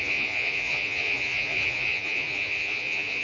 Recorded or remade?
remade